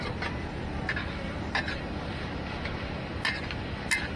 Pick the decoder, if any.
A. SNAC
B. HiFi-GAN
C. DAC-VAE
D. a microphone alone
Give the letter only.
D